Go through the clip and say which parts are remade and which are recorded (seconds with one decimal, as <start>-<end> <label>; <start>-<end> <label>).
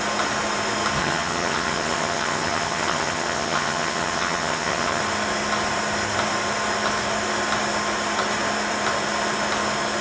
0.0-1.0 recorded; 1.0-5.0 remade; 5.0-10.0 recorded